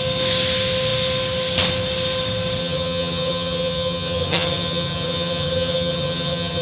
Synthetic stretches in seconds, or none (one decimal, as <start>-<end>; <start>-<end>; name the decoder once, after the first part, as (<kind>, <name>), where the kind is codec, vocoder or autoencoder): 2.6-6.6 (vocoder, HiFi-GAN)